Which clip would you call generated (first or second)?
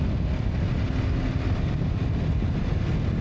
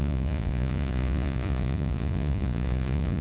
second